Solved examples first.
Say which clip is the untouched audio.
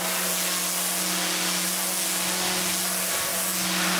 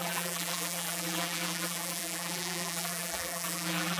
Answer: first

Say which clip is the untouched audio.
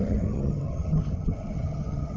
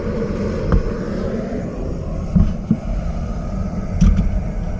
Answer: second